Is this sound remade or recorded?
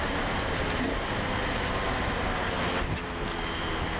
recorded